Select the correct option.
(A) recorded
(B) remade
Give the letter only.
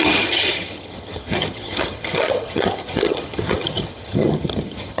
B